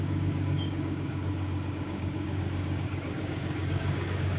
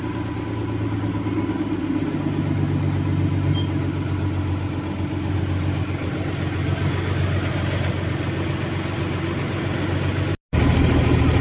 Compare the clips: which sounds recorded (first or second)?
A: second